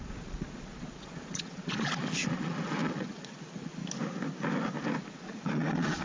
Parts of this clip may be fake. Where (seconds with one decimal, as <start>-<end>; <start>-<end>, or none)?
0.0-3.8; 5.1-6.0